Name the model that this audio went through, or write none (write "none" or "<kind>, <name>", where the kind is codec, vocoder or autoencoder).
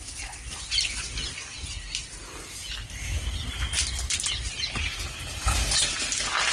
none